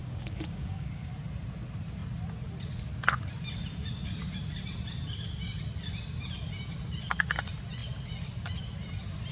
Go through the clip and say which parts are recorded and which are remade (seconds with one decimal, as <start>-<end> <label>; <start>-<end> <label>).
0.0-1.1 remade; 1.1-9.3 recorded

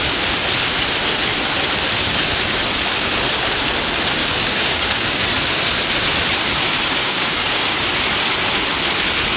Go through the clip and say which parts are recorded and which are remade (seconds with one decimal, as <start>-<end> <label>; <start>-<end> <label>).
0.0-4.2 recorded; 4.2-5.2 remade; 5.2-7.0 recorded; 7.0-7.8 remade; 7.8-9.4 recorded

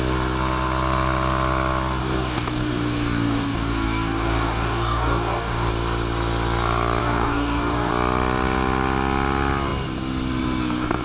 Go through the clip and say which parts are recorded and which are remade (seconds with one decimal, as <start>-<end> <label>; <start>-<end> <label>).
0.0-2.0 recorded; 2.0-5.7 remade; 5.7-7.0 recorded; 7.0-7.9 remade; 7.9-11.0 recorded

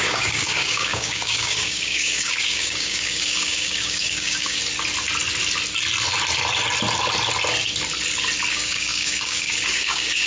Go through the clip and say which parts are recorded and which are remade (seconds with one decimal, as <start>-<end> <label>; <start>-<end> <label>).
0.0-4.6 remade; 4.6-8.5 recorded; 8.5-10.3 remade

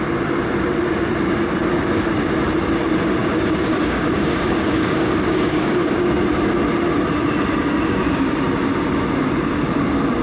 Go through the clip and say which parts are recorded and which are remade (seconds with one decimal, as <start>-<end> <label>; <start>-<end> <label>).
0.0-3.2 recorded; 3.2-6.2 remade; 6.2-10.2 recorded

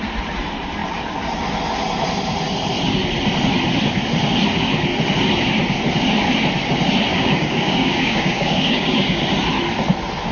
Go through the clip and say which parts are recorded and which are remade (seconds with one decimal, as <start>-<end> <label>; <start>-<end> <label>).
0.0-7.1 recorded; 7.1-9.2 remade; 9.2-10.3 recorded

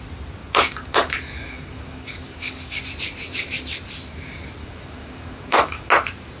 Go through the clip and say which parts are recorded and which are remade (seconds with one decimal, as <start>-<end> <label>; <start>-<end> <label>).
0.0-0.4 recorded; 0.4-2.8 remade; 2.8-4.6 recorded; 4.6-5.9 remade; 5.9-6.4 recorded

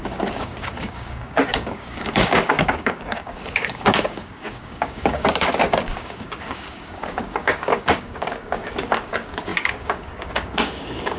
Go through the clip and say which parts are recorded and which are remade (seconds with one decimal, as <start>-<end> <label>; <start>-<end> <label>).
0.0-11.2 remade